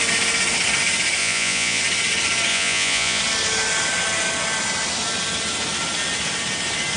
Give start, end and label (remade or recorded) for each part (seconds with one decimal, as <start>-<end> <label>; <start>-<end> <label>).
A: 0.0-1.2 recorded; 1.2-1.8 remade; 1.8-2.5 recorded; 2.5-3.2 remade; 3.2-7.0 recorded